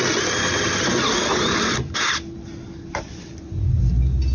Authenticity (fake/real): real